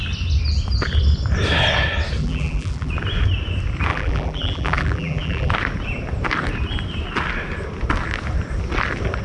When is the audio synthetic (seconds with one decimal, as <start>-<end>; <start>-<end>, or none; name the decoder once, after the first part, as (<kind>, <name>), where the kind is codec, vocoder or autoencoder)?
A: 2.2-2.9 (vocoder, BigVGAN v2); 3.9-5.5